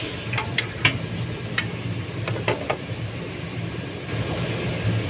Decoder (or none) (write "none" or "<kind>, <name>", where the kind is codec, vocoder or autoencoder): none